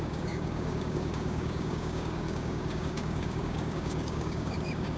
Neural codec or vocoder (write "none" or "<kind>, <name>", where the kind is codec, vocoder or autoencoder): codec, DAC